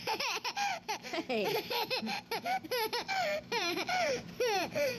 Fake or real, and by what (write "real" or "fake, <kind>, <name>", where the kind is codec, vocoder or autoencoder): fake, vocoder, BigVGAN v2